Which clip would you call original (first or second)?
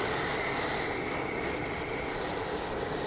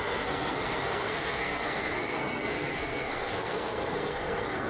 first